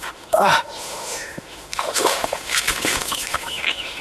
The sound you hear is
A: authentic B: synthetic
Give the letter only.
B